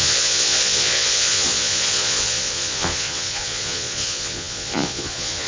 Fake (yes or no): yes